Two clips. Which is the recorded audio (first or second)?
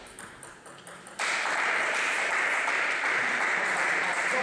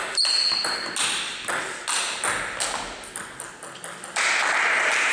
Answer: second